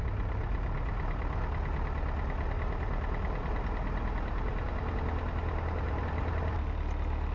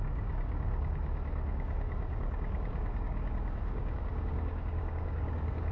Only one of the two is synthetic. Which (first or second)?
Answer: second